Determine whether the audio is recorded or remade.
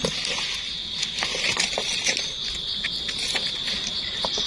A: recorded